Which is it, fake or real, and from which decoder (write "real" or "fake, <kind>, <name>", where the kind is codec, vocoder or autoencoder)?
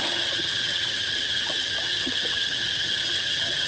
fake, vocoder, HiFi-GAN